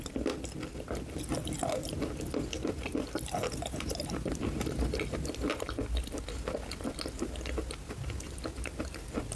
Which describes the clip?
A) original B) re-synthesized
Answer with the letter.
A